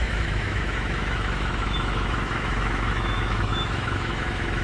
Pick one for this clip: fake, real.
fake